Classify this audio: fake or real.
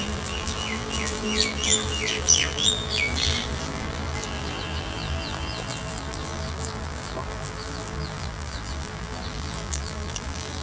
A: fake